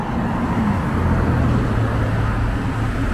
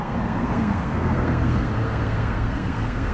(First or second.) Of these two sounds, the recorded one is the first